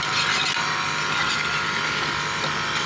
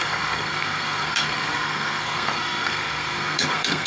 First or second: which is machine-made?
second